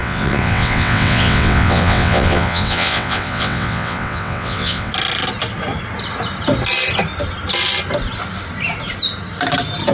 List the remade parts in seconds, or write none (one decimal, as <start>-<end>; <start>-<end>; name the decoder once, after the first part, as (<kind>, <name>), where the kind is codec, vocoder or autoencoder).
0.0-4.9 (vocoder, WaveNeXt)